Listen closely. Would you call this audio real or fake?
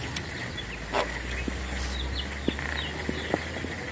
real